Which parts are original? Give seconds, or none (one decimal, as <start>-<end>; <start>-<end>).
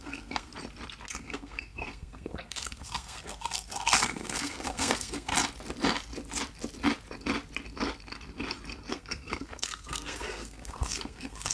0.5-1.1; 5.3-8.9